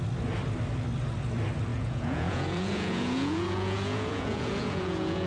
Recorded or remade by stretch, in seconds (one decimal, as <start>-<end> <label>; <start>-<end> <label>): 0.0-1.7 recorded; 1.7-5.3 remade